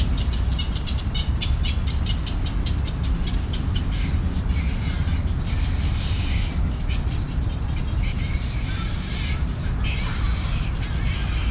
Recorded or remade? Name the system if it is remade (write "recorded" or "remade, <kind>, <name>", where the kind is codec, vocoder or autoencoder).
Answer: recorded